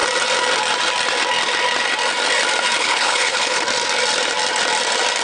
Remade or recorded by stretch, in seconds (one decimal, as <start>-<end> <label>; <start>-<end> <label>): 0.0-2.8 recorded; 2.8-3.6 remade; 3.6-5.2 recorded